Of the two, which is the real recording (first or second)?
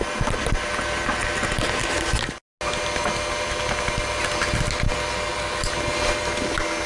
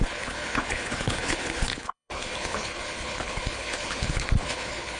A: first